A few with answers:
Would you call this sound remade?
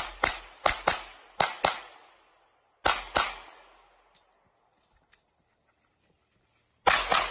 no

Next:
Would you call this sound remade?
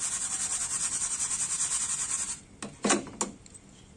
no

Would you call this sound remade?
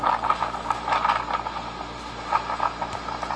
no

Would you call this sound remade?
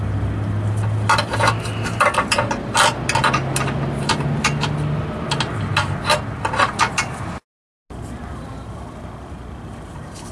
no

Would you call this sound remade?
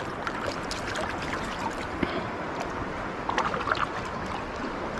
no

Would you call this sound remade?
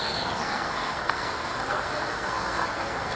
yes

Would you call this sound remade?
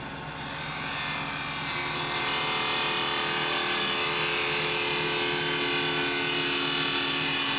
no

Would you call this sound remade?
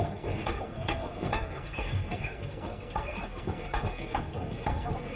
yes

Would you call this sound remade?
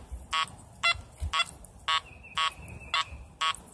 no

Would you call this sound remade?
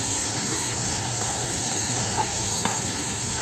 yes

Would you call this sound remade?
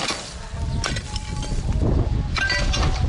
no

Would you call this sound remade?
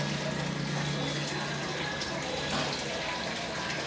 no